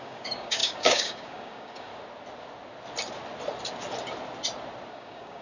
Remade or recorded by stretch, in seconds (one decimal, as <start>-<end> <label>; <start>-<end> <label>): 0.0-1.9 remade; 1.9-4.9 recorded; 4.9-5.4 remade